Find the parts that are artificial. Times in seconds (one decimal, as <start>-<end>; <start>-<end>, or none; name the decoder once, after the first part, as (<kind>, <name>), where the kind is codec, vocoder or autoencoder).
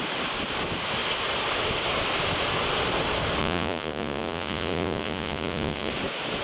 3.4-5.9 (vocoder, Vocos)